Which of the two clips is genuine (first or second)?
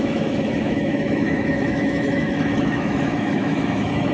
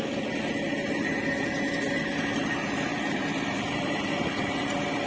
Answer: second